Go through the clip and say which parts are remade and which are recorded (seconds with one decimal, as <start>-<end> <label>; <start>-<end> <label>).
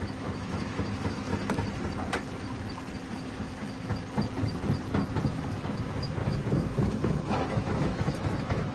0.0-1.3 remade; 1.3-3.1 recorded; 3.1-3.9 remade; 3.9-5.3 recorded; 5.3-8.7 remade